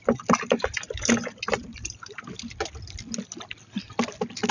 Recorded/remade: recorded